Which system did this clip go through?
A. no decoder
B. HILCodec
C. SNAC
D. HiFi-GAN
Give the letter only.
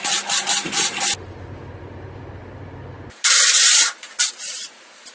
A